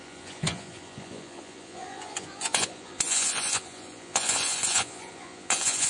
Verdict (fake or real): fake